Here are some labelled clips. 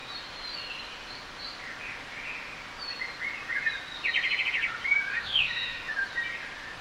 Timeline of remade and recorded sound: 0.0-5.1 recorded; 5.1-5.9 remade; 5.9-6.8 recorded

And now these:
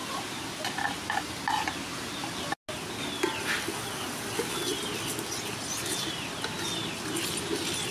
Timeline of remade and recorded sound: 0.0-7.9 recorded

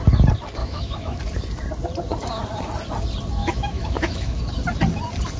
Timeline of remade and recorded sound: 0.0-0.6 recorded; 0.6-1.2 remade; 1.2-3.4 recorded; 3.4-4.4 remade; 4.4-5.4 recorded

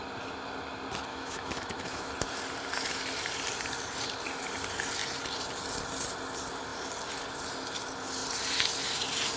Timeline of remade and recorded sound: 0.0-1.1 recorded; 1.1-2.1 remade; 2.1-9.4 recorded

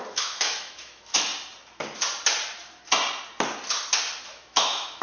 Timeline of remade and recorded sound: 0.0-1.3 remade; 1.3-4.3 recorded; 4.3-5.0 remade

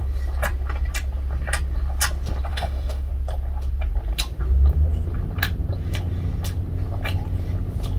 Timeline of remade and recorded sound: 0.0-2.5 recorded; 2.5-3.1 remade; 3.1-8.0 recorded